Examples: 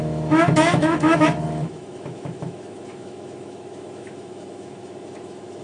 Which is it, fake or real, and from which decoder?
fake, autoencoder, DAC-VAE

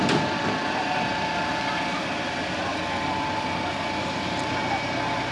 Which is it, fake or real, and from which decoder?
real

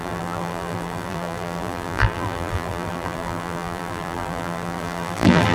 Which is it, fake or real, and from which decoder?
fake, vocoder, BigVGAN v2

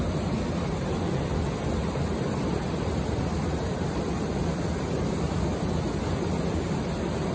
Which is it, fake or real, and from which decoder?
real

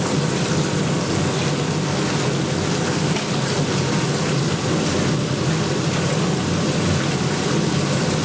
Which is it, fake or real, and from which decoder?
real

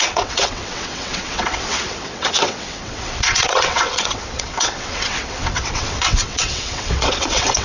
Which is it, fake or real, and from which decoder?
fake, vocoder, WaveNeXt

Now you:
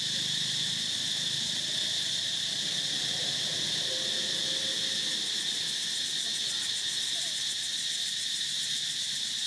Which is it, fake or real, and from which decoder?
real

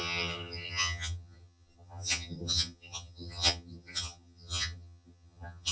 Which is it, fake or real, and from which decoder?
fake, vocoder, HiFi-GAN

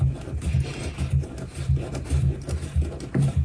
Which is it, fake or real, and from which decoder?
real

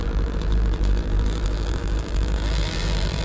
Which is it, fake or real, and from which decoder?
fake, vocoder, BigVGAN v2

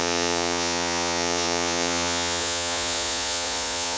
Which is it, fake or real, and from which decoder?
fake, vocoder, Vocos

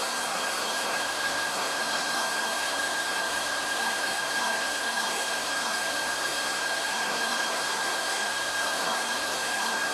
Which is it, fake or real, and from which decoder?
fake, codec, SNAC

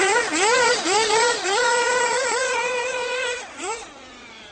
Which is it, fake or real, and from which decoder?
fake, vocoder, Vocos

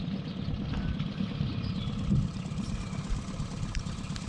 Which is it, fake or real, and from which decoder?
real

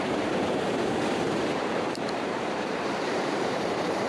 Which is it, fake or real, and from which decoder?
fake, vocoder, BigVGAN v2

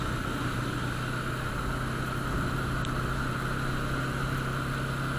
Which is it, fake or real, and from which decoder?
real